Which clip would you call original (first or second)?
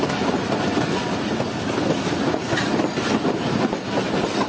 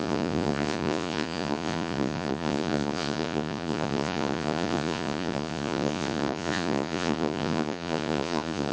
first